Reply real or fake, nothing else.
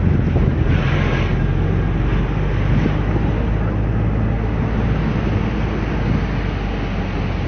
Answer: real